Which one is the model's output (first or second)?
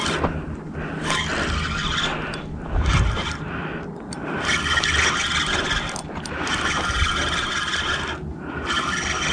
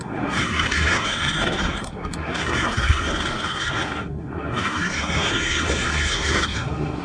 second